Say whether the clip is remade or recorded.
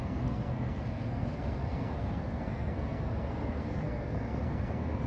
remade